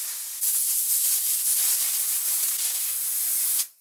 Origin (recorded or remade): recorded